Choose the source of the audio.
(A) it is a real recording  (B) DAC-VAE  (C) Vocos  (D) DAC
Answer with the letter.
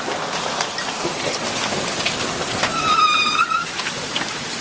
A